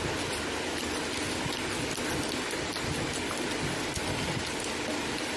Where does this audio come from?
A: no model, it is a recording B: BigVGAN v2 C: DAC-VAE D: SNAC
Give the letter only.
A